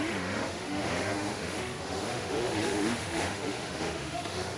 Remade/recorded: remade